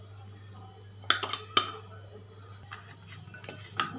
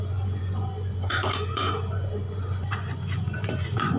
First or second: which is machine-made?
second